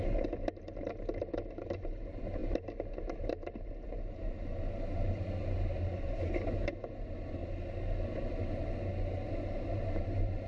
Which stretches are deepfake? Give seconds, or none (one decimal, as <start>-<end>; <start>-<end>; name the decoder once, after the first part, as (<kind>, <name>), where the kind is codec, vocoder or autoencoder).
0.0-7.4 (vocoder, BigVGAN v2); 9.6-10.5